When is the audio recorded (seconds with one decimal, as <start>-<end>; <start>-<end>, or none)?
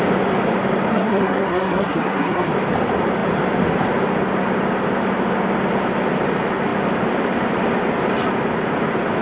0.0-0.9; 2.5-9.2